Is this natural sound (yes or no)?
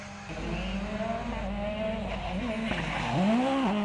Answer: yes